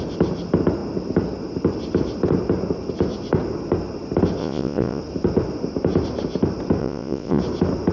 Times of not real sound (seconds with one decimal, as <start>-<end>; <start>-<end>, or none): 4.4-5.0; 6.8-7.4